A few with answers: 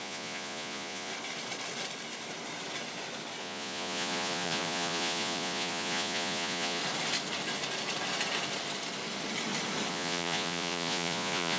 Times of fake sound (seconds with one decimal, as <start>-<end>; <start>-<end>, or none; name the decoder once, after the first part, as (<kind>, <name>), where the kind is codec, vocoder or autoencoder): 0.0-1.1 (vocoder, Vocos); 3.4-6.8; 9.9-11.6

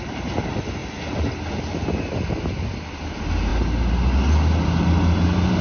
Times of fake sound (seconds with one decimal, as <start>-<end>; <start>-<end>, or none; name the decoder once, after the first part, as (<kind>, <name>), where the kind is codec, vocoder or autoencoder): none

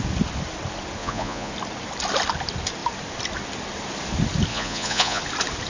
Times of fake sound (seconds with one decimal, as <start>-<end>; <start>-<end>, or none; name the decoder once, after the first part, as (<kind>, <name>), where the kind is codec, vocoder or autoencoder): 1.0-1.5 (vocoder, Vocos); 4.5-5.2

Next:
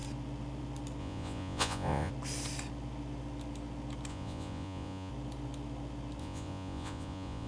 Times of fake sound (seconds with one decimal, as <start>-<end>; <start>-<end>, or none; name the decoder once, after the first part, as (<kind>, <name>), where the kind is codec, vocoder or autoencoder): 1.0-2.1 (vocoder, Vocos); 4.1-5.1; 6.2-7.5